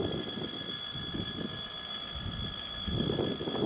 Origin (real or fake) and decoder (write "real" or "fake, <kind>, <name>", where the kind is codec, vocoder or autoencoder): real